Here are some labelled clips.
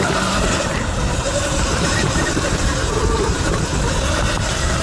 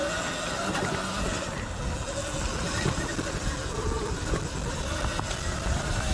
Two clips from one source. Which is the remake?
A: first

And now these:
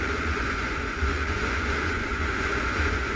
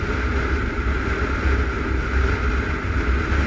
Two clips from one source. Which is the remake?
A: first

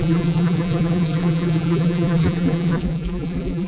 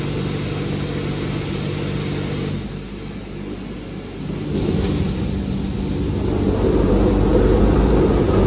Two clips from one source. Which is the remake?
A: first